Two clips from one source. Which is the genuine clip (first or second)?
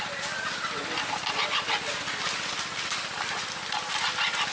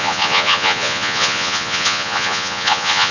first